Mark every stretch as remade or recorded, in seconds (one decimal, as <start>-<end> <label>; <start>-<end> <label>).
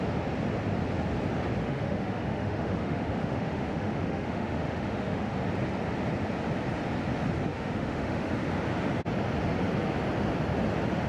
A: 0.0-1.6 recorded; 1.6-5.3 remade; 5.3-7.5 recorded; 7.5-8.3 remade; 8.3-11.1 recorded